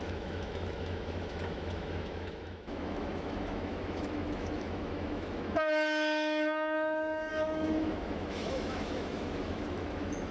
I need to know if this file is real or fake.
fake